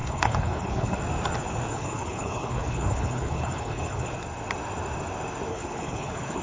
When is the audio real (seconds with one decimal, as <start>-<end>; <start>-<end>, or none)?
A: 1.0-1.7; 4.2-5.5